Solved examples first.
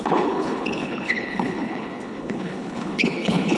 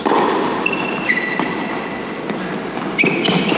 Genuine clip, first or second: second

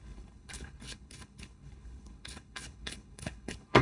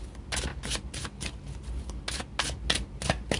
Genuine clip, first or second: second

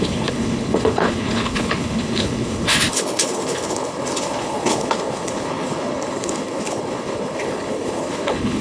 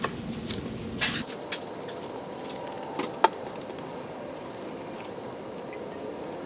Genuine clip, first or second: second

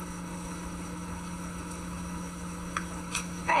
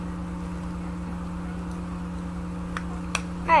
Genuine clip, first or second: second